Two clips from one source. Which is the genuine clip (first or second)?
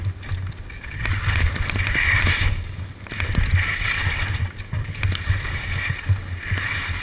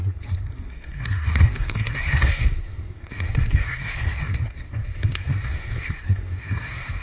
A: first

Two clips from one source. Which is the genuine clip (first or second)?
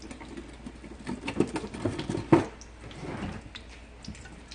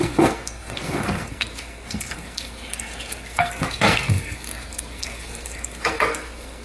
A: first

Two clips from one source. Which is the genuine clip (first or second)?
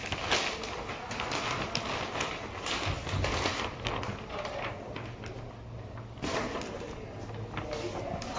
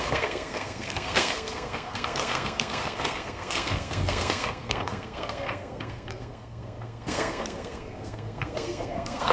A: first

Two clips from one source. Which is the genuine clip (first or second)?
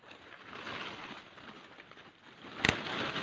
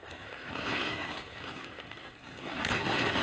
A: first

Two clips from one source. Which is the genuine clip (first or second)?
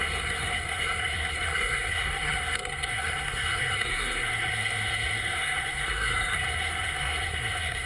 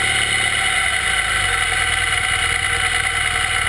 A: second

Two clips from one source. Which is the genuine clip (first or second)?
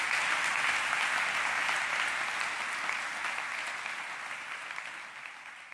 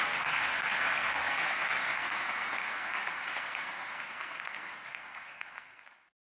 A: first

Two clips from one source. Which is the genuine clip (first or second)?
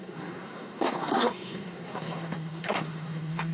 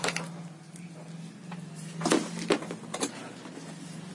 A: second